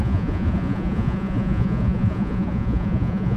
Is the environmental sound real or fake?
fake